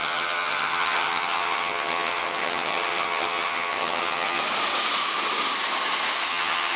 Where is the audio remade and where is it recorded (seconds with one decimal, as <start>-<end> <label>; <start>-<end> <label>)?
0.0-4.4 remade; 4.4-6.3 recorded; 6.3-6.8 remade